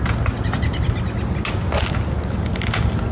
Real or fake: real